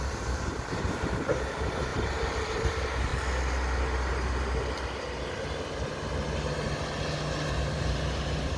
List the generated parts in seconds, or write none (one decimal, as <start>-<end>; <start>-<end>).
0.0-3.1; 7.5-8.6